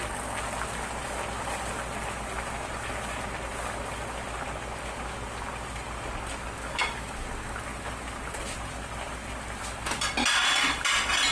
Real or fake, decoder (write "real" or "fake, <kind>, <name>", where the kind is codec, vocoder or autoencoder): real